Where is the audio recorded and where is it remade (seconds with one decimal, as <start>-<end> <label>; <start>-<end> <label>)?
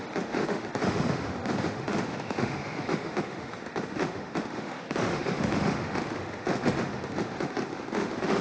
0.0-8.4 remade